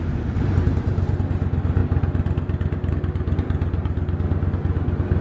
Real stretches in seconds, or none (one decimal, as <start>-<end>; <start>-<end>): 0.0-5.2